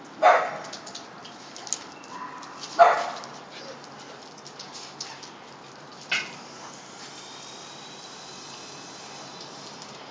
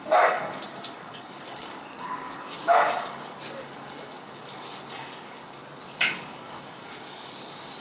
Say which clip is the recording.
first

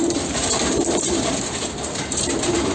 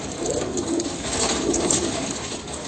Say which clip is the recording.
first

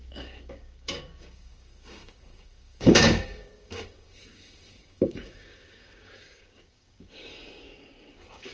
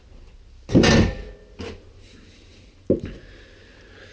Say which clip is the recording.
second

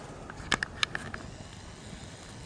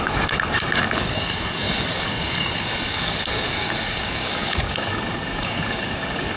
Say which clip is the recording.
first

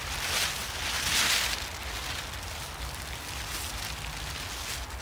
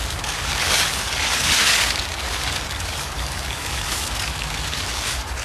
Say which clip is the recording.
first